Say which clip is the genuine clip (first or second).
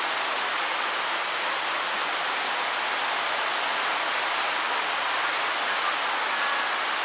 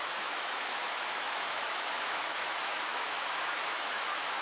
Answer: first